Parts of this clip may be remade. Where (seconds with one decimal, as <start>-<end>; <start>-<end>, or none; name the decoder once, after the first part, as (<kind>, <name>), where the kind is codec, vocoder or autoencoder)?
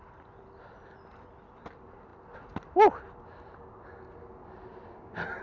none